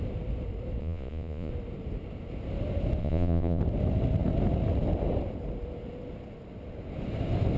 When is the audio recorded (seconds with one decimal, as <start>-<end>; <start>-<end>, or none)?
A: 0.0-0.8; 1.5-3.0; 3.6-7.6